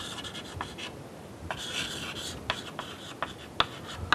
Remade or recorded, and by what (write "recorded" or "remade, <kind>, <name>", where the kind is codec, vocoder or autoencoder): recorded